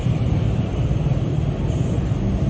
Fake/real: real